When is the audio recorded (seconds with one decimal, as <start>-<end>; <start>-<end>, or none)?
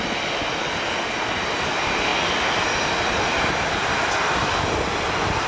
0.0-5.5